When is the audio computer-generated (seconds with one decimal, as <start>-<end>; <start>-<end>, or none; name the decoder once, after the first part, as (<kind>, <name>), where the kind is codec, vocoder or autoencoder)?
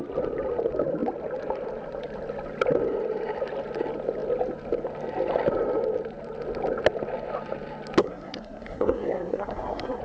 8.0-10.0 (codec, SNAC)